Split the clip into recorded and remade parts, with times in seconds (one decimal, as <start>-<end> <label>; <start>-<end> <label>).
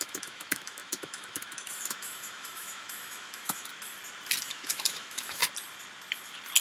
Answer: 0.0-3.7 remade; 3.7-4.4 recorded; 4.4-5.4 remade; 5.4-6.6 recorded